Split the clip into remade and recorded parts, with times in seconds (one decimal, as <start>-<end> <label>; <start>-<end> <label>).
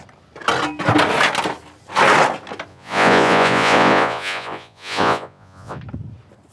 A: 0.0-2.7 recorded; 2.7-5.8 remade; 5.8-6.5 recorded